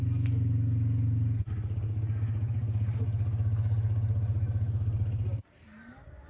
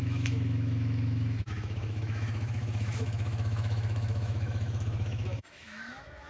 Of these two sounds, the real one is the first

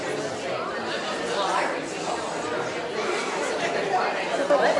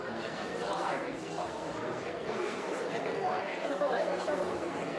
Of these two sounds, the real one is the first